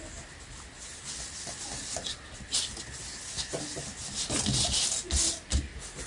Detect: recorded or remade recorded